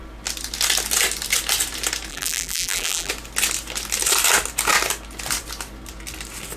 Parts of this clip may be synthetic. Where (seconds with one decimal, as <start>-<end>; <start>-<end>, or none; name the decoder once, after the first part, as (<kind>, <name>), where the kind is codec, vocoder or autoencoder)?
2.1-3.1 (vocoder, BigVGAN v2)